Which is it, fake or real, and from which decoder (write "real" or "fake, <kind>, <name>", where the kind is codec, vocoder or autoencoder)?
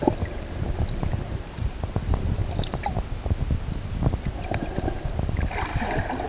real